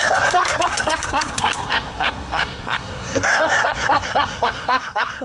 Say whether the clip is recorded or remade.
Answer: remade